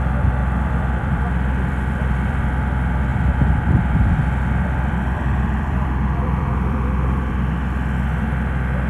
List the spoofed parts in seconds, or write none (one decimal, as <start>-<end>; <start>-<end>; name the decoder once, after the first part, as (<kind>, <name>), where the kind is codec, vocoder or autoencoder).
0.4-2.4 (vocoder, BigVGAN v2); 3.1-7.3